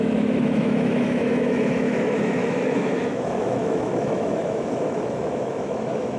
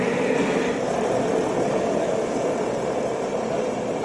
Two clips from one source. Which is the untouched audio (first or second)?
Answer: second